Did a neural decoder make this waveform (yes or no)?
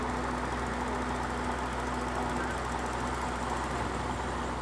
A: no